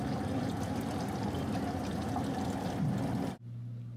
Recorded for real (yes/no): yes